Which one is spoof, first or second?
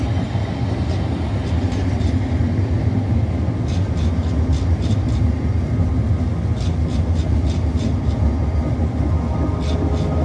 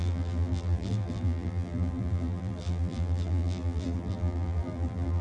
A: second